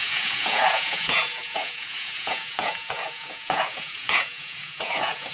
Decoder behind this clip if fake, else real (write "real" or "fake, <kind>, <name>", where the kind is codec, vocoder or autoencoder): fake, vocoder, Vocos